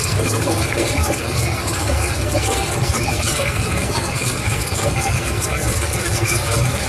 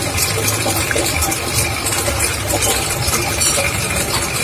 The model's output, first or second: first